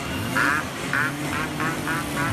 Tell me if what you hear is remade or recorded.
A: recorded